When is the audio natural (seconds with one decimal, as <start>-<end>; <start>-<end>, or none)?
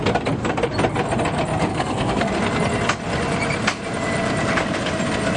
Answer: 0.0-1.7; 2.3-5.4